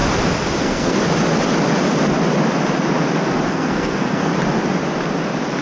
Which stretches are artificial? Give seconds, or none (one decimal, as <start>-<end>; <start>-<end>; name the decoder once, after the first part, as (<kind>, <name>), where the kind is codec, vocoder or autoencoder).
0.6-1.0 (codec, SNAC); 3.5-4.3